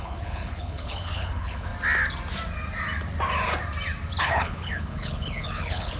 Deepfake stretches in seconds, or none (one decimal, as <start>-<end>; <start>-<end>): 0.0-1.7; 4.2-6.0